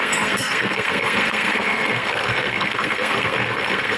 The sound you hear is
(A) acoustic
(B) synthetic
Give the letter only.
B